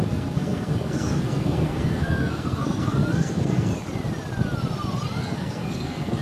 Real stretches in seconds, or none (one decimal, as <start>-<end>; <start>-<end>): 3.7-5.2